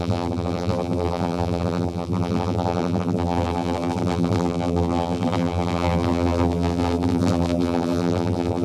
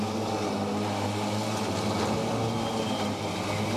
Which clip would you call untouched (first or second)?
second